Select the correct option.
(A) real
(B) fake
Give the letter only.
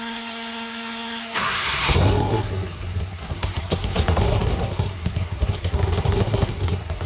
B